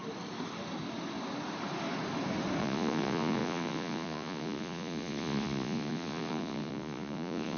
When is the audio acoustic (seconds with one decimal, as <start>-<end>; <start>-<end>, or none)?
0.0-2.6